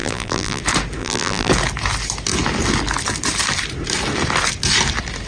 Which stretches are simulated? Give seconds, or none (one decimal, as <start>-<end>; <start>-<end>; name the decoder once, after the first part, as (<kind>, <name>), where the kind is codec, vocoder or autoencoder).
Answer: 0.0-0.6 (vocoder, BigVGAN v2); 1.0-1.5